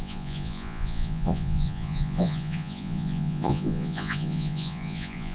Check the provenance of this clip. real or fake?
fake